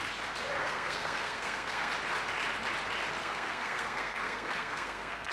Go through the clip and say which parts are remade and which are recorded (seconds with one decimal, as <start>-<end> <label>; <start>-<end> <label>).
0.0-0.6 recorded; 0.6-1.9 remade; 1.9-3.2 recorded; 3.2-5.3 remade